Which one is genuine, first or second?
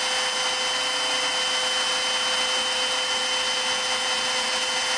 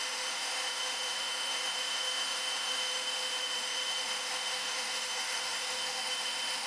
first